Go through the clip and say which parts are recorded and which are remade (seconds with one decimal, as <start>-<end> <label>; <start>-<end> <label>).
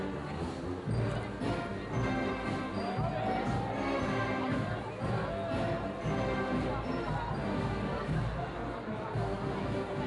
0.0-10.1 recorded